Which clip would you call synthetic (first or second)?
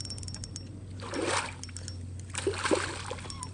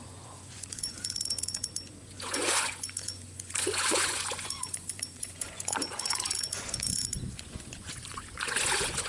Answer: second